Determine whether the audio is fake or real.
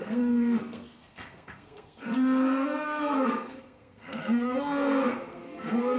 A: fake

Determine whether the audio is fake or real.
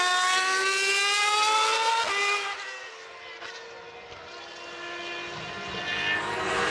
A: real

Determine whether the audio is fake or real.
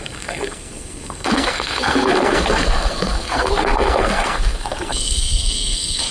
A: fake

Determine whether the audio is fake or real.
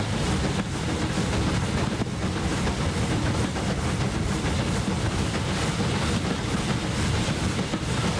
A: real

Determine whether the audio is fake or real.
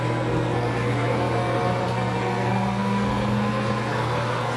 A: fake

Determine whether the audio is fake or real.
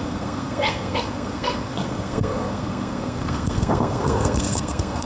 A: fake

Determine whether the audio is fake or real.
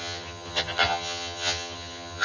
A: fake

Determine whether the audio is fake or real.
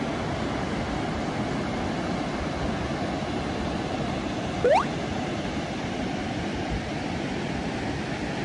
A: real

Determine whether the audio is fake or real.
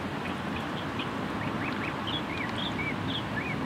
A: real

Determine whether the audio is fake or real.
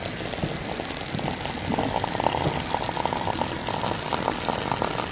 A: real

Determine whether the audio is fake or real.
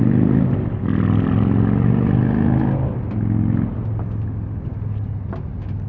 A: real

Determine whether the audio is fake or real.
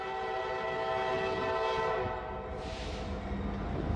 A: real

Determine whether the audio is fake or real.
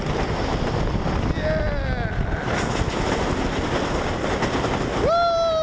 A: real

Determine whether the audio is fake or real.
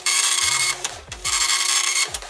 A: fake